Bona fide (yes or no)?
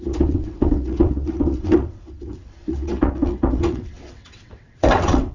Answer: no